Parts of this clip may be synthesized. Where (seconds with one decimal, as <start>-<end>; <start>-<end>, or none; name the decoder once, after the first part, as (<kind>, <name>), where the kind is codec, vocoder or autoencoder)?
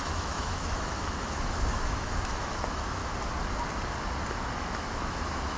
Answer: 0.0-3.0 (autoencoder, DAC-VAE); 4.5-5.6